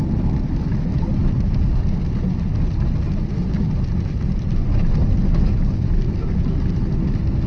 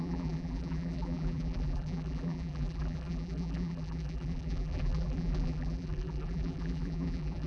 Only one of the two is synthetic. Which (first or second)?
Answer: second